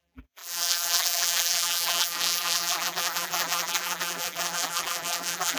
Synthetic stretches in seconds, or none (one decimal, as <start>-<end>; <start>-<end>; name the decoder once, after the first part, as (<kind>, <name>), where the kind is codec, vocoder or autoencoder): 0.0-5.6 (vocoder, BigVGAN v2)